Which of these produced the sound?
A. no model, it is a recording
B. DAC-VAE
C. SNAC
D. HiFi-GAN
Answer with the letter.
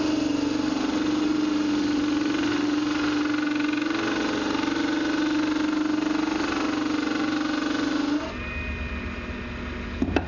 A